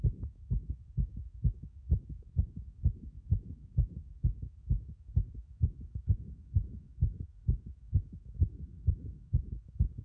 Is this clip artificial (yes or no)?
yes